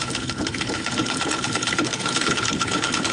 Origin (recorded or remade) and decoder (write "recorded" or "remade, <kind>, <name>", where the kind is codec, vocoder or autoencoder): remade, codec, HILCodec